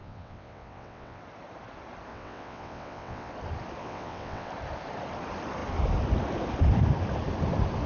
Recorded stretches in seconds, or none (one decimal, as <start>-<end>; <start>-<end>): 1.2-2.1; 3.3-3.8; 4.5-7.9